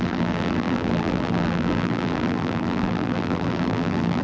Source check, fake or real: fake